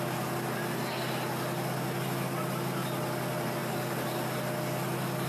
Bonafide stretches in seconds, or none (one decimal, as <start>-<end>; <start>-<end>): 0.0-5.3

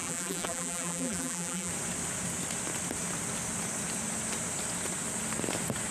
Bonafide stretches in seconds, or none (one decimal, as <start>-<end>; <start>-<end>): 1.7-5.9

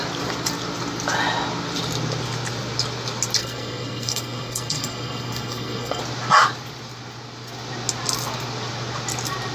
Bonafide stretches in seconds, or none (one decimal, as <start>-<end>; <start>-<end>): 0.0-3.4; 6.0-9.5

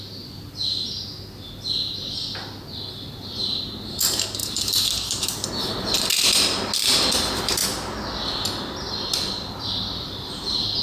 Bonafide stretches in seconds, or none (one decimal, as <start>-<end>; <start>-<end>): 0.0-4.4; 5.5-10.0

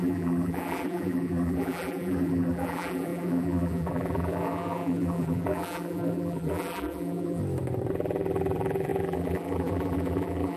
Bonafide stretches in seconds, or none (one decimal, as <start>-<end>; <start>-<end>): 7.4-7.9

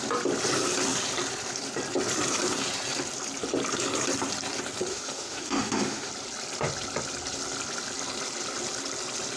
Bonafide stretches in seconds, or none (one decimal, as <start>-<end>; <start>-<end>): 0.0-4.9; 6.1-9.4

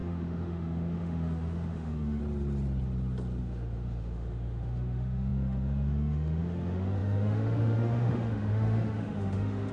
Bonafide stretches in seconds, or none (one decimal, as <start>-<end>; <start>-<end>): 2.2-3.4

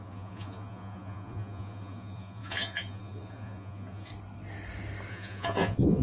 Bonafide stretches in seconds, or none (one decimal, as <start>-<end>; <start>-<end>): 4.1-5.1